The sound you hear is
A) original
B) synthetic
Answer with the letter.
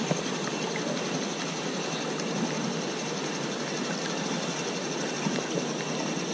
A